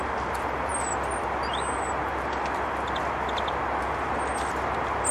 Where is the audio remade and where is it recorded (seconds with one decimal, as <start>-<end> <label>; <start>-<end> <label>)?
0.0-5.1 recorded